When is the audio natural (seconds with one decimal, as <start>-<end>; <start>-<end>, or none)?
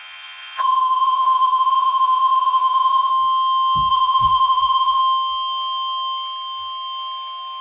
3.1-3.9; 5.0-7.6